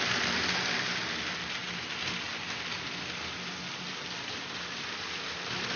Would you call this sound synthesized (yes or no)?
no